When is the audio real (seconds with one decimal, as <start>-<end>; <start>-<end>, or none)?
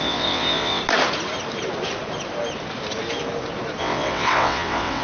0.8-3.8